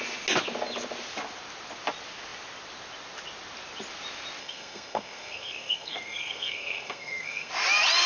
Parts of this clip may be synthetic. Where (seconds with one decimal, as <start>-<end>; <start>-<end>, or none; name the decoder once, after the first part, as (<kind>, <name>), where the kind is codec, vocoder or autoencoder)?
4.4-7.5 (codec, SNAC)